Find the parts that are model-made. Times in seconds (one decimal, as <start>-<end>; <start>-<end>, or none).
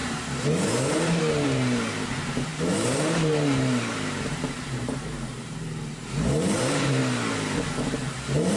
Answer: 0.0-7.0; 7.9-8.6